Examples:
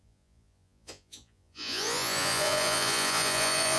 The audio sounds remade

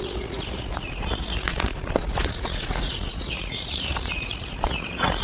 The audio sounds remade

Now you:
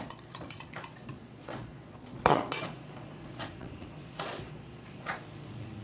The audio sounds remade